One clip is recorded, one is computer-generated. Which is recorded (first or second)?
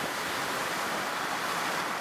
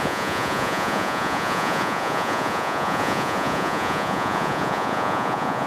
first